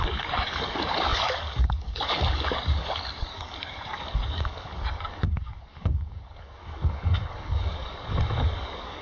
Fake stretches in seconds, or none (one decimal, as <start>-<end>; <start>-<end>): 0.0-9.0